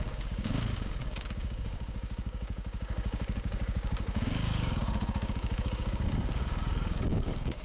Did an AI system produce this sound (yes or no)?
yes